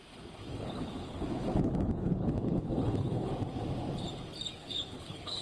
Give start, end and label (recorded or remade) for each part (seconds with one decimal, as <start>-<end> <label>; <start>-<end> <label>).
0.0-0.5 recorded; 0.5-3.3 remade; 3.3-4.6 recorded; 4.6-5.4 remade

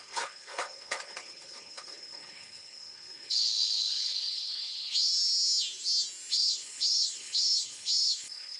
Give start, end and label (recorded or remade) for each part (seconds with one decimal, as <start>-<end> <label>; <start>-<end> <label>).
0.0-5.1 remade; 5.1-6.3 recorded; 6.3-8.6 remade